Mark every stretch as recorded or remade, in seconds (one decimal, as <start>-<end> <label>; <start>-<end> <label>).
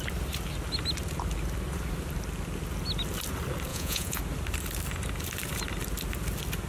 0.0-3.7 recorded; 3.7-4.2 remade; 4.2-6.7 recorded